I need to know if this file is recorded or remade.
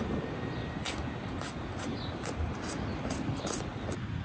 recorded